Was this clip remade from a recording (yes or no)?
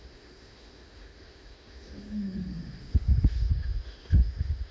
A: yes